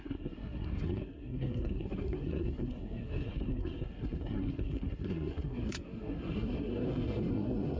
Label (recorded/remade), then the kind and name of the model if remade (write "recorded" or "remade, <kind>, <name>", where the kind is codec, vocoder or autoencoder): remade, codec, SNAC